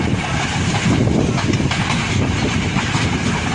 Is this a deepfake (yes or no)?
no